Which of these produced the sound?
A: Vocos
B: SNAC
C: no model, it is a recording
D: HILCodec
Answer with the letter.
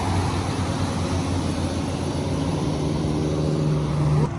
C